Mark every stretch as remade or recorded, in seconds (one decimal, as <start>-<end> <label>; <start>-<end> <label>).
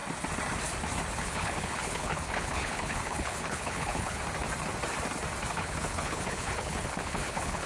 0.0-1.2 recorded; 1.2-4.2 remade; 4.2-5.5 recorded; 5.5-7.7 remade